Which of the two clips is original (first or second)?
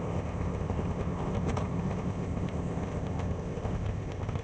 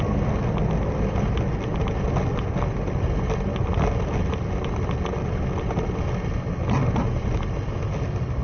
second